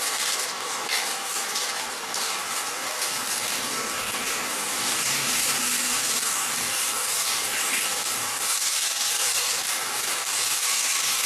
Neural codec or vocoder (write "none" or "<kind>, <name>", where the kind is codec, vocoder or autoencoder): codec, DAC